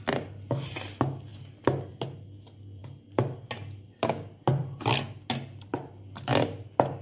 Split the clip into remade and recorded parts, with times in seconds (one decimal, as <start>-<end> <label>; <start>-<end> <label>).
0.0-7.0 recorded